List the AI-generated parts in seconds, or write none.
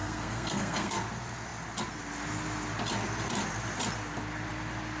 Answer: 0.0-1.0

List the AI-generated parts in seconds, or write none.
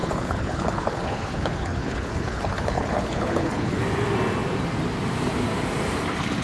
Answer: 0.0-3.8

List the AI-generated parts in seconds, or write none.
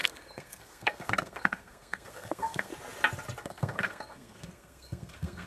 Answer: 0.0-2.7; 3.4-5.5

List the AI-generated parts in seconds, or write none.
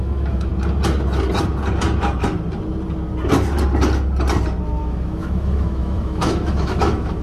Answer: 0.0-0.5; 4.8-7.2